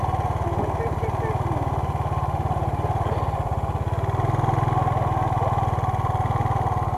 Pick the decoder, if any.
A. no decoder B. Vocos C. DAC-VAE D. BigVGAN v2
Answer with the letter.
A